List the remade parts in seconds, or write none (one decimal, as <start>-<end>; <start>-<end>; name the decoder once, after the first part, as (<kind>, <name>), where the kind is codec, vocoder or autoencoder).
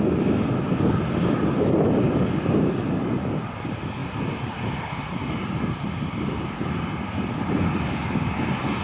none